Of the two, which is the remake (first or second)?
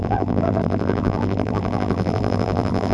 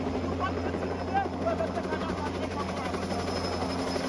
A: first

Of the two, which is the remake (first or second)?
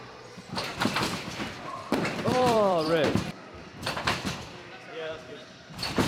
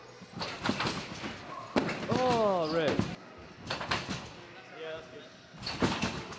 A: first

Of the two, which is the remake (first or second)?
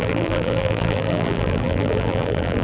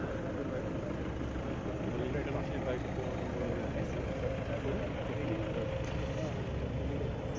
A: first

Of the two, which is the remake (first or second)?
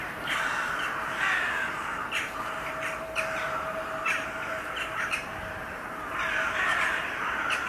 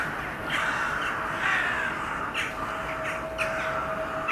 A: first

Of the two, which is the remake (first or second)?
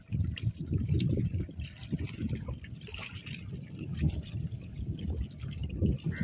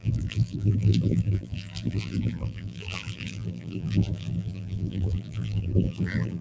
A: second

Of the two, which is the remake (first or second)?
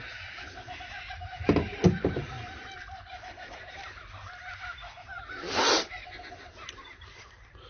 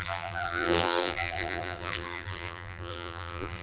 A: second